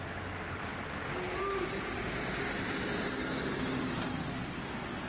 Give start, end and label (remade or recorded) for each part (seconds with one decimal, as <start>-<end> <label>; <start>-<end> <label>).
0.0-5.1 recorded

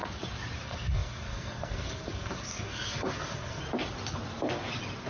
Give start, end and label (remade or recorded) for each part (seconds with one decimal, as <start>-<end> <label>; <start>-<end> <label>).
0.0-0.6 recorded; 0.6-3.6 remade; 3.6-5.1 recorded

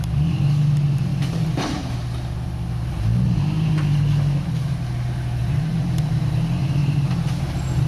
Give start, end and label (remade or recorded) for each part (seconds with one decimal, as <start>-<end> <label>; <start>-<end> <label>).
0.0-1.1 recorded; 1.1-2.7 remade; 2.7-5.4 recorded; 5.4-6.3 remade; 6.3-6.8 recorded; 6.8-7.4 remade; 7.4-7.9 recorded

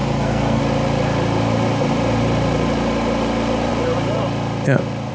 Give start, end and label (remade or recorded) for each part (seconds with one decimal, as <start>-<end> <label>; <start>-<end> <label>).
0.0-0.6 remade; 0.6-5.1 recorded

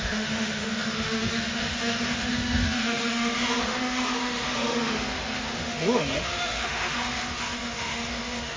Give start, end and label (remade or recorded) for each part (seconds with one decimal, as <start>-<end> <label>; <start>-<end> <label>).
0.0-8.6 remade

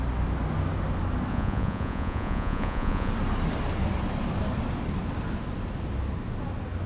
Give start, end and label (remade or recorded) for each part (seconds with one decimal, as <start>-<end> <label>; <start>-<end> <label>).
0.0-1.3 recorded; 1.3-3.1 remade; 3.1-6.9 recorded

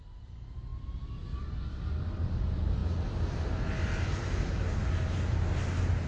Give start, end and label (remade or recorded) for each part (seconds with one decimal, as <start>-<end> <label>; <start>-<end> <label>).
0.0-0.7 recorded; 0.7-2.0 remade; 2.0-6.1 recorded

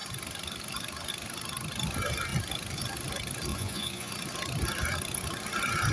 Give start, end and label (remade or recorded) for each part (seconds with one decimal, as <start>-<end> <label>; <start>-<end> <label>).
0.0-3.5 recorded; 3.5-4.1 remade; 4.1-5.9 recorded